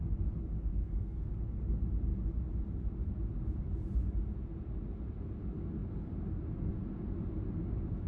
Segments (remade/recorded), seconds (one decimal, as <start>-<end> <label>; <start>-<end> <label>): 0.0-0.7 recorded; 0.7-1.3 remade; 1.3-8.1 recorded